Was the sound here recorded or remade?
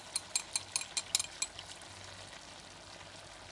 recorded